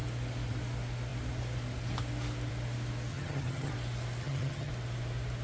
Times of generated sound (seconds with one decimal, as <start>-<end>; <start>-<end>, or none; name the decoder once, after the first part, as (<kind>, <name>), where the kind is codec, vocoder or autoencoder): 3.1-3.7 (vocoder, HiFi-GAN); 4.2-4.7